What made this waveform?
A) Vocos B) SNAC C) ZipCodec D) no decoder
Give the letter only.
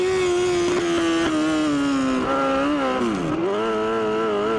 D